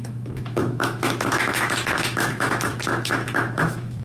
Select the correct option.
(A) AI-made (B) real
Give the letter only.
A